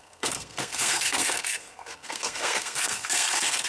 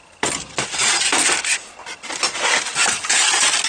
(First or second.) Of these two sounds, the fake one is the first